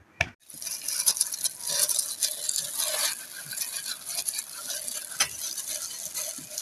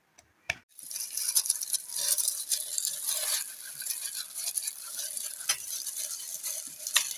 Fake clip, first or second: second